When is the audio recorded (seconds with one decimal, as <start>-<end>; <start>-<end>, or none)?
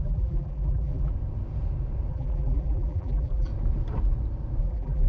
1.1-2.1; 3.5-4.6